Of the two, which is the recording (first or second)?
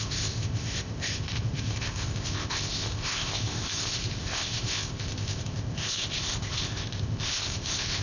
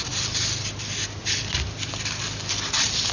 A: second